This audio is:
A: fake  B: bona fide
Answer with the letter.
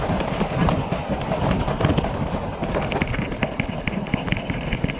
B